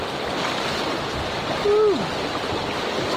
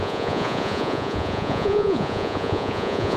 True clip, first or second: first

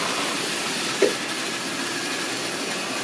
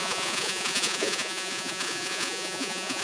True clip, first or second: first